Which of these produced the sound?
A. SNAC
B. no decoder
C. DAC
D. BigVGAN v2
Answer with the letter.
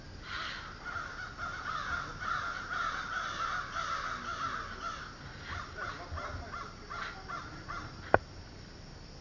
B